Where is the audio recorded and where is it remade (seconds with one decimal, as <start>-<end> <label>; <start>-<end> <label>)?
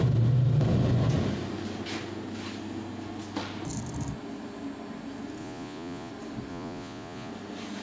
0.0-5.4 recorded; 5.4-6.1 remade; 6.1-6.5 recorded; 6.5-7.3 remade; 7.3-7.8 recorded